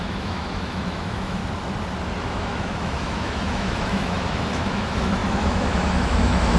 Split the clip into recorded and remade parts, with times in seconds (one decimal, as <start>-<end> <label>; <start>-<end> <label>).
0.0-1.4 remade; 1.4-2.2 recorded; 2.2-6.6 remade